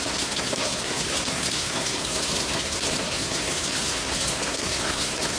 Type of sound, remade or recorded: remade